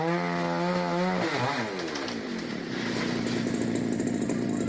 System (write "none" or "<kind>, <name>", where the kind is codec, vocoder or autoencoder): none